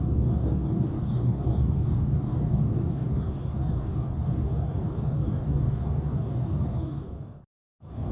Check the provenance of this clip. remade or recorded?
remade